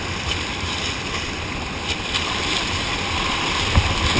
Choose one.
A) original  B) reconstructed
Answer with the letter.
B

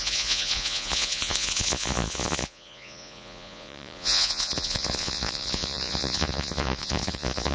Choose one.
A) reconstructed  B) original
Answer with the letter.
A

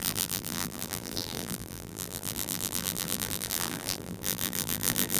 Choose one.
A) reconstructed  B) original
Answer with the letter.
A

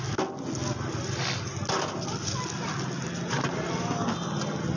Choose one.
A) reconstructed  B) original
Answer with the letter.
B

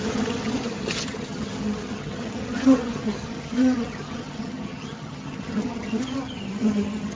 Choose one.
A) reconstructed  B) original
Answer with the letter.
A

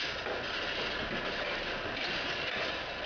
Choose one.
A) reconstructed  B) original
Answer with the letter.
B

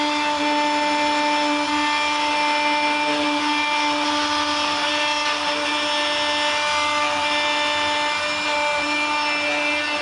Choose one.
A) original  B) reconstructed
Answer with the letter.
A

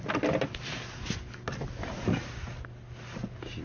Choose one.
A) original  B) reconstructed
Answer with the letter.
A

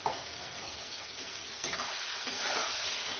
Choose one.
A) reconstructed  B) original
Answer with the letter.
A